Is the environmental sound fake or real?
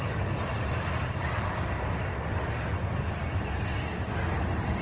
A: real